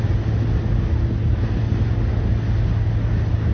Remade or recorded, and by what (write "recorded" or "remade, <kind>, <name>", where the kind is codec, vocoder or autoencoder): recorded